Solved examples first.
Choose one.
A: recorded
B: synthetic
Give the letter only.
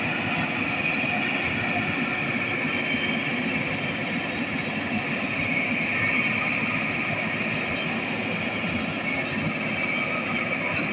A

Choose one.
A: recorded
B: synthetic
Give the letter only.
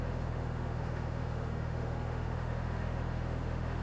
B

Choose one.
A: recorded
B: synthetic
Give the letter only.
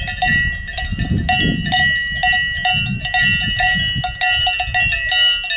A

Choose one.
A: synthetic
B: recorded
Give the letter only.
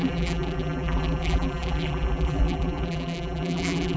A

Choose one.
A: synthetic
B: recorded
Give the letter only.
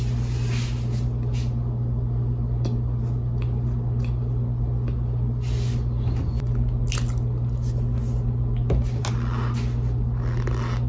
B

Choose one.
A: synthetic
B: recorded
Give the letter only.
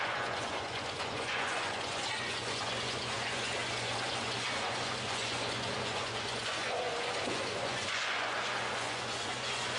A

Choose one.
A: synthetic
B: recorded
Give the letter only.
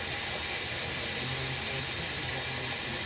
B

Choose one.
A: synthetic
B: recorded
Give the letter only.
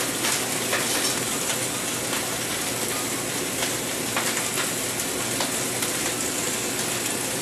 B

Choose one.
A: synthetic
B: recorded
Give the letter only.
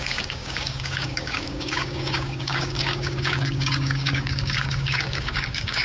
A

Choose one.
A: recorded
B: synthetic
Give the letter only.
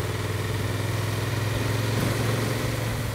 A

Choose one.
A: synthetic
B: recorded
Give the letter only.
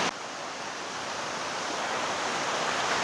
B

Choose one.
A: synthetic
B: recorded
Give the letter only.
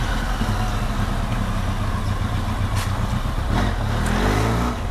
B